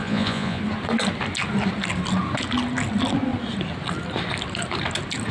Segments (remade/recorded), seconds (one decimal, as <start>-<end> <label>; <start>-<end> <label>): 0.0-0.6 remade; 0.6-5.3 recorded